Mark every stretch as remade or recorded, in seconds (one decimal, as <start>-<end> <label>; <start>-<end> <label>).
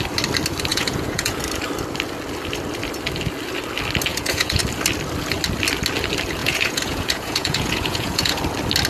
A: 0.0-0.7 recorded; 0.7-1.4 remade; 1.4-4.1 recorded; 4.1-4.6 remade; 4.6-6.4 recorded; 6.4-8.4 remade; 8.4-8.9 recorded